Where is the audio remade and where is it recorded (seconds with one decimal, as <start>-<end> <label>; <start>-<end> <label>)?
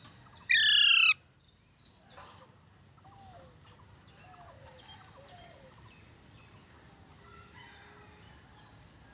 0.0-0.9 recorded; 0.9-2.4 remade; 2.4-9.1 recorded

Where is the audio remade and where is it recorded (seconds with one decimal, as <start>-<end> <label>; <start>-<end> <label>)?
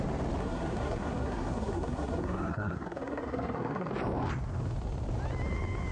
0.0-0.4 recorded; 0.4-3.9 remade; 3.9-5.9 recorded